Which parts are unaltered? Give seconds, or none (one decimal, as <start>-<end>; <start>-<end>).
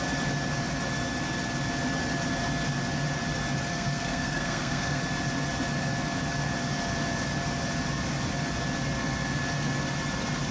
0.0-3.7; 5.0-10.5